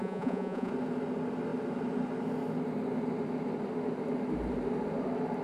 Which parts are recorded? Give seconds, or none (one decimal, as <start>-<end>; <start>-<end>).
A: 0.7-5.4